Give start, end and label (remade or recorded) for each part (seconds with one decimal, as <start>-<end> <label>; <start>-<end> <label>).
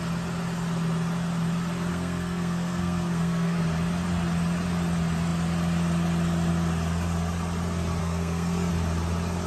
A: 0.0-1.9 recorded; 1.9-3.6 remade; 3.6-8.0 recorded; 8.0-8.7 remade; 8.7-9.5 recorded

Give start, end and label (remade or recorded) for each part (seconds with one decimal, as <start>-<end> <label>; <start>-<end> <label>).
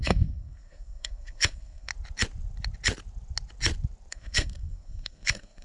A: 0.0-1.9 remade; 1.9-4.1 recorded; 4.1-5.6 remade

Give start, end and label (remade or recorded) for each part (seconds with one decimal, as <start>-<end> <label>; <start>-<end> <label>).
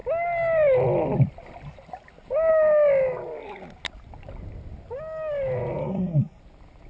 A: 0.0-5.8 recorded; 5.8-6.4 remade; 6.4-6.9 recorded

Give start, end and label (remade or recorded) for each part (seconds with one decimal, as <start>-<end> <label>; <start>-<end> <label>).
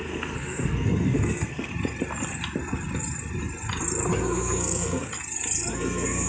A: 0.0-1.7 remade; 1.7-4.1 recorded; 4.1-5.1 remade; 5.1-5.7 recorded; 5.7-6.3 remade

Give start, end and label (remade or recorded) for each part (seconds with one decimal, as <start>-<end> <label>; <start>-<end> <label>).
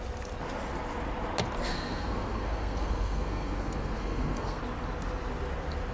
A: 0.0-1.6 recorded; 1.6-4.6 remade; 4.6-5.9 recorded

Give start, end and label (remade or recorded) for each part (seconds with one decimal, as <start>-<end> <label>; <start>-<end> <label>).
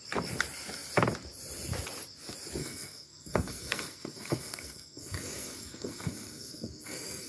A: 0.0-2.6 recorded; 2.6-7.3 remade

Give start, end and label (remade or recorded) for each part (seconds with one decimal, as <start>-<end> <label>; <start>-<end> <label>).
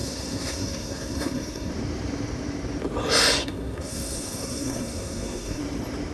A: 0.0-1.7 remade; 1.7-3.4 recorded; 3.4-5.6 remade; 5.6-6.1 recorded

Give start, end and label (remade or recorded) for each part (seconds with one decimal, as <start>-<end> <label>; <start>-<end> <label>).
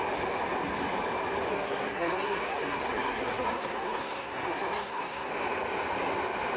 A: 0.0-1.5 recorded; 1.5-5.3 remade; 5.3-6.6 recorded